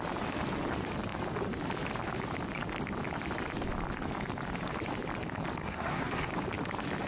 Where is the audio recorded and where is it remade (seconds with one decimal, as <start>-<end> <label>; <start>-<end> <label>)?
0.0-5.6 recorded; 5.6-6.3 remade; 6.3-7.1 recorded